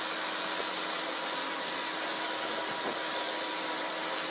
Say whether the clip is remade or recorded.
recorded